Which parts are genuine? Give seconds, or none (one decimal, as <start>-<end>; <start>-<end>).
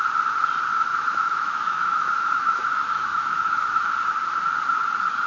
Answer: 0.0-0.7; 3.9-5.3